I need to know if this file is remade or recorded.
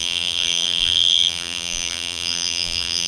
remade